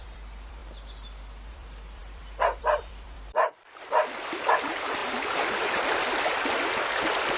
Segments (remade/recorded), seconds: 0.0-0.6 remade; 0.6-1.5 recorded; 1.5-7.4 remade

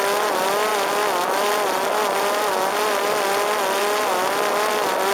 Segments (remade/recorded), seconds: 0.0-5.1 recorded

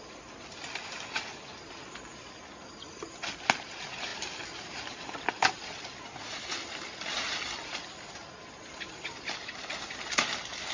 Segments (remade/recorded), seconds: 0.0-10.7 recorded

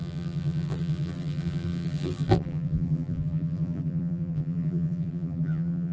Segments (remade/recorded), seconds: 0.0-5.9 remade

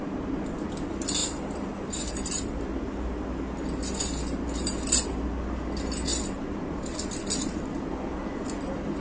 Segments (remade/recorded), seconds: 0.0-1.2 recorded; 1.2-2.6 remade; 2.6-9.0 recorded

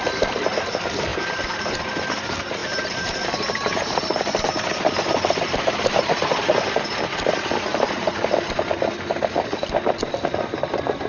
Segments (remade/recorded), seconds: 0.0-1.1 recorded; 1.1-1.8 remade; 1.8-2.6 recorded; 2.6-4.8 remade; 4.8-7.7 recorded; 7.7-8.3 remade; 8.3-11.1 recorded